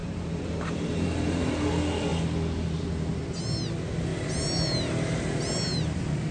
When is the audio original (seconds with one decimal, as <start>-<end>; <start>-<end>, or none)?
1.5-6.3